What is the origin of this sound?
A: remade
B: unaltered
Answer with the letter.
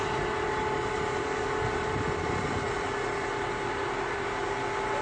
B